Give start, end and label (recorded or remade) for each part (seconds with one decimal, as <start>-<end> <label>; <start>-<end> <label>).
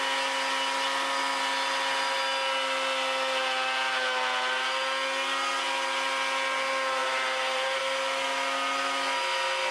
0.0-7.0 recorded; 7.0-7.8 remade; 7.8-9.7 recorded